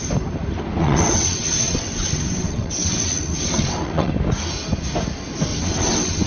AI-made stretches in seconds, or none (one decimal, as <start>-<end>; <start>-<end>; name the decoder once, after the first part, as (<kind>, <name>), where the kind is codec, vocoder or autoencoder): 0.8-4.1 (vocoder, WaveNeXt); 5.5-6.3